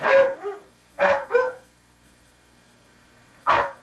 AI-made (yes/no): yes